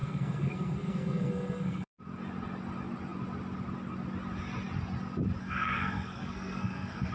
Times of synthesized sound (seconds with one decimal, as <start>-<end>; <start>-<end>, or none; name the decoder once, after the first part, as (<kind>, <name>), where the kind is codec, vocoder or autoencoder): 0.0-2.0 (codec, SNAC); 5.4-7.1